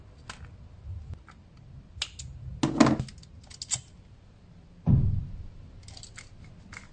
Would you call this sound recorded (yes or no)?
yes